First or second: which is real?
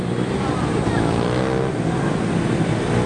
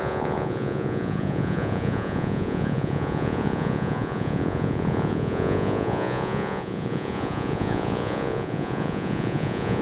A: first